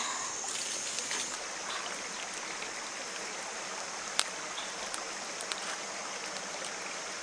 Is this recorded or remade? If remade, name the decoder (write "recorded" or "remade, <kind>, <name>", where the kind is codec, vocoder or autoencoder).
recorded